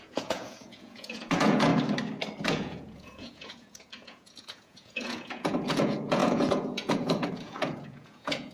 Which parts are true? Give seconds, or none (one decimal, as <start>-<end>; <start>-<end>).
1.7-2.4